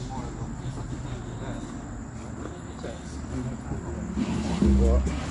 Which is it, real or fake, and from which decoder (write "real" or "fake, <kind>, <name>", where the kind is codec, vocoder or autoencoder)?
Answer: real